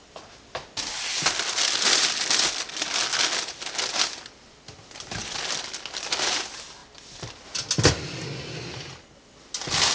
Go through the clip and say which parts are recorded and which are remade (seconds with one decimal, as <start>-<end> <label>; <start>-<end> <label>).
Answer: 0.0-9.9 recorded